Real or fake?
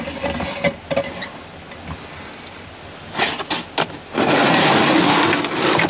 real